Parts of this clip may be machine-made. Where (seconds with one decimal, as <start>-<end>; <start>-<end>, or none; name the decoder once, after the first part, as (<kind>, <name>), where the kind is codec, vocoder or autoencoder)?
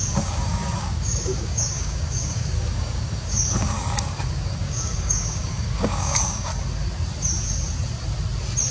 0.0-6.5 (codec, DAC)